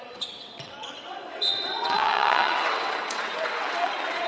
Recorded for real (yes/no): no